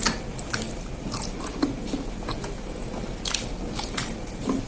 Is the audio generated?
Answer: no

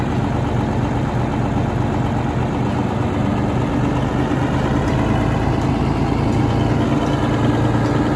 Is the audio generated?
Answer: no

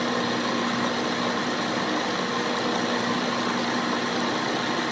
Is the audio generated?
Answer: no